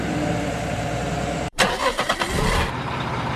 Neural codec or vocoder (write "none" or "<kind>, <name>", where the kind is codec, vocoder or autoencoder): vocoder, BigVGAN v2